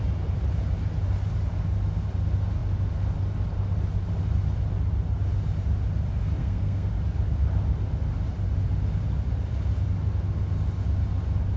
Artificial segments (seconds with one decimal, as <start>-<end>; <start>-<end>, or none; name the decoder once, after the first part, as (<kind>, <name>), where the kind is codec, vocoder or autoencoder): 6.4-6.9 (codec, SNAC)